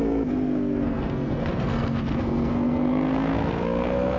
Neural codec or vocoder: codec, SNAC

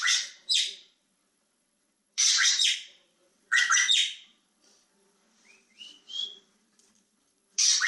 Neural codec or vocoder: vocoder, Vocos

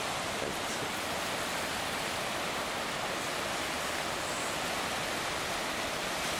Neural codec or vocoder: none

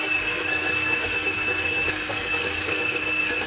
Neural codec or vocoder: codec, SNAC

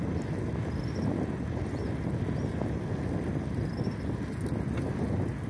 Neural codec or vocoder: none